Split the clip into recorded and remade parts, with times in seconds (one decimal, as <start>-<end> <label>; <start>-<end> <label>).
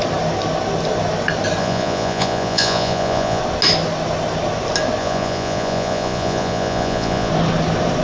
0.0-1.6 recorded; 1.6-3.4 remade; 3.4-5.0 recorded; 5.0-7.3 remade; 7.3-8.0 recorded